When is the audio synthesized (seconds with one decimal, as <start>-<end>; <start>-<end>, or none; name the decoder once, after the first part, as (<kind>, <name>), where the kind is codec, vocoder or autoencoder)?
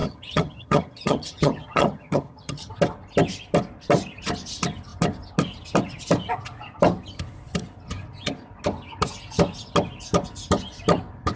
0.0-2.7 (vocoder, HiFi-GAN)